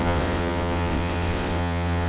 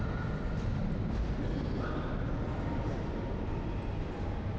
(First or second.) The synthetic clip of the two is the first